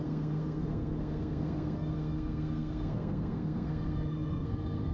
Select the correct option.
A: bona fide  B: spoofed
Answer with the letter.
B